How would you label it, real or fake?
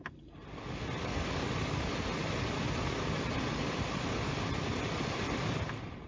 real